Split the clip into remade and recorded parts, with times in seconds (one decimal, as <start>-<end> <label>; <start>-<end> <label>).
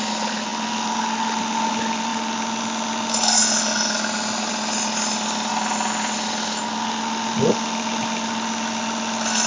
0.0-9.5 recorded